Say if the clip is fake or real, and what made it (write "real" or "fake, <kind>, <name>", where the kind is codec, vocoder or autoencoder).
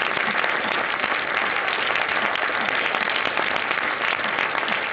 real